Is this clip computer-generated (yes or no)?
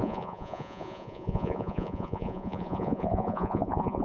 yes